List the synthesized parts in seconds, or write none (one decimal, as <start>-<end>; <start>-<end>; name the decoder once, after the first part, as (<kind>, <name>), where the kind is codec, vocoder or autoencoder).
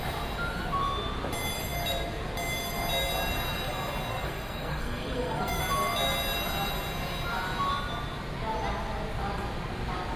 4.1-5.6 (codec, SNAC)